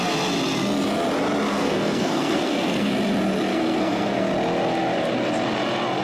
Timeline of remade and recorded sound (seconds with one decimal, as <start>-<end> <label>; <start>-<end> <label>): 0.0-1.5 recorded; 1.5-2.9 remade; 2.9-3.5 recorded; 3.5-4.3 remade; 4.3-6.0 recorded